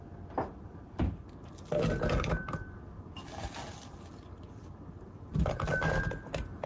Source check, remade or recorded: recorded